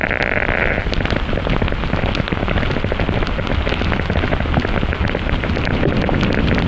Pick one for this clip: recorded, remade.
recorded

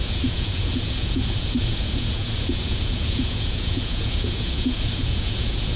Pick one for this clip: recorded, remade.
remade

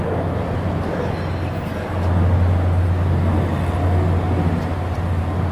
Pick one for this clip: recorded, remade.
recorded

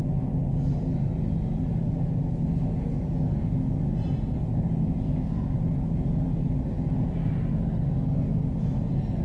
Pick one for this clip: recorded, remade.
recorded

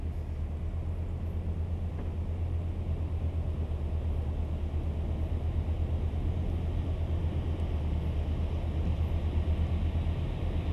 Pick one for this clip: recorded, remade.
recorded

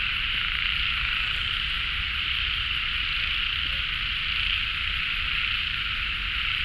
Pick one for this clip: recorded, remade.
recorded